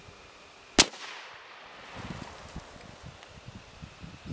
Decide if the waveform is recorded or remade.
recorded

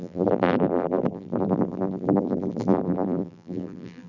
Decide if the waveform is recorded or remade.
remade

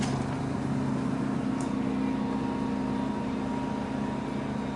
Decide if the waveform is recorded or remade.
recorded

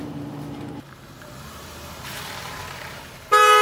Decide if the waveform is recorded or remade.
remade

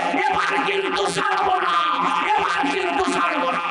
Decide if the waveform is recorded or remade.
remade